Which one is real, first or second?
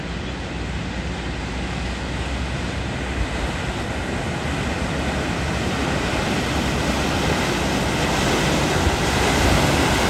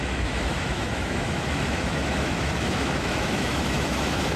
first